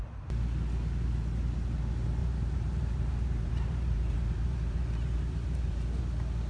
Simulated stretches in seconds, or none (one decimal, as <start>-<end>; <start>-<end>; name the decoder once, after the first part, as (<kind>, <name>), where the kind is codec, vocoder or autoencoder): 2.2-6.0 (vocoder, BigVGAN v2)